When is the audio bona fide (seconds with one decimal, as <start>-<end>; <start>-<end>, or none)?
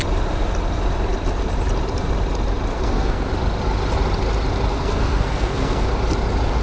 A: 0.0-2.7; 3.3-4.7; 5.9-6.6